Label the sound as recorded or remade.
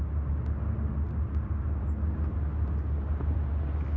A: recorded